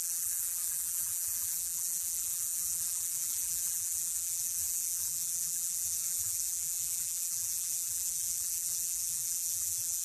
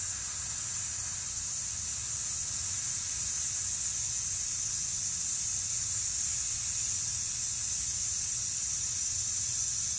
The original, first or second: second